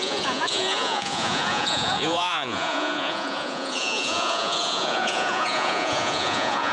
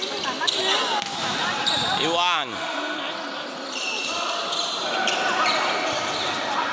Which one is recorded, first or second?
second